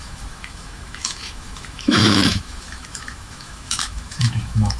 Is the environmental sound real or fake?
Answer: fake